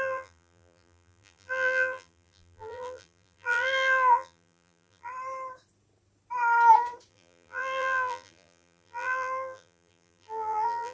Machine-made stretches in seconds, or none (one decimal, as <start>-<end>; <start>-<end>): 0.0-5.1; 7.1-10.9